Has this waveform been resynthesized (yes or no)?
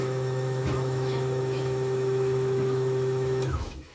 yes